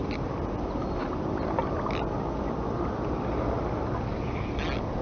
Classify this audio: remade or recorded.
recorded